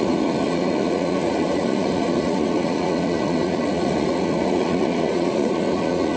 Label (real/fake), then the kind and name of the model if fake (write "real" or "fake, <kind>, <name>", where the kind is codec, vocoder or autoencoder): fake, vocoder, Vocos